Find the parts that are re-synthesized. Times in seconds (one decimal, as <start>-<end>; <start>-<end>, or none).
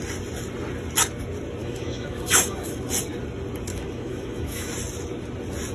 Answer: 1.6-2.8; 3.7-4.7